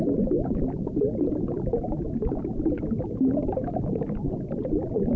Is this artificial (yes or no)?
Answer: yes